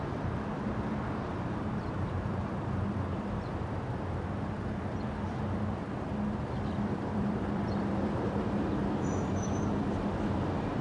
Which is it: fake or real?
fake